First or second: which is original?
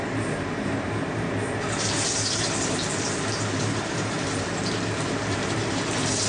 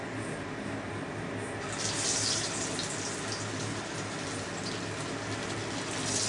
second